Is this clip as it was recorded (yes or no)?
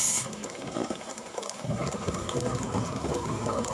no